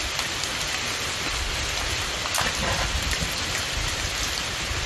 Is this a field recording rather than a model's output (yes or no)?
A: yes